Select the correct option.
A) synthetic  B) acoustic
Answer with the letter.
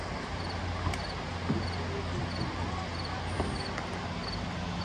B